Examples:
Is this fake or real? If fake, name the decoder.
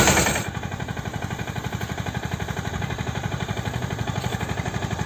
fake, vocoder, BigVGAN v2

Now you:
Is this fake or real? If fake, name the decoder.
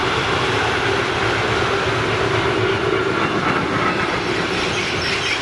real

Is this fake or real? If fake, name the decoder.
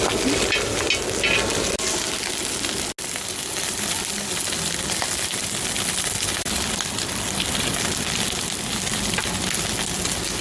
real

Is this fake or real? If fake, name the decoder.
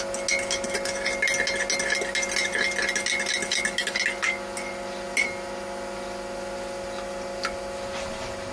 real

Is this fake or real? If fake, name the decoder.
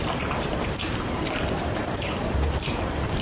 fake, vocoder, BigVGAN v2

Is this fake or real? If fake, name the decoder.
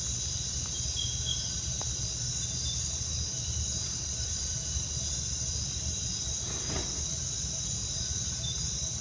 real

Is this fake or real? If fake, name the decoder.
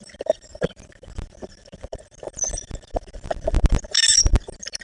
fake, vocoder, BigVGAN v2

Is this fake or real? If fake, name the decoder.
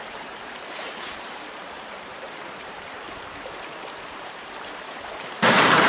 fake, vocoder, BigVGAN v2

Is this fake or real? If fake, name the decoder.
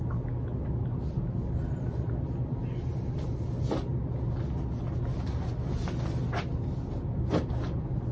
real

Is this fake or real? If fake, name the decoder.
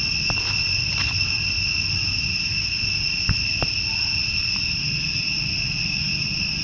fake, vocoder, BigVGAN v2